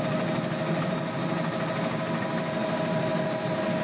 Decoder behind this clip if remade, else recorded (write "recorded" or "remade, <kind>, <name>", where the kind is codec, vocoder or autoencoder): recorded